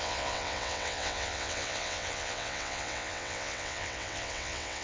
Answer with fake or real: fake